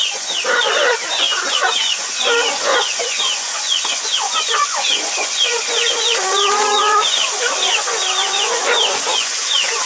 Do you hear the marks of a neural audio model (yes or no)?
yes